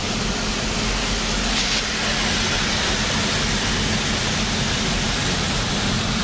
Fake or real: real